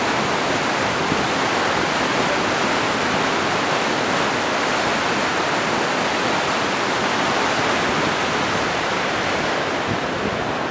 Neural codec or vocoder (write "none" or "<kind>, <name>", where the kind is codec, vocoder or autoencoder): none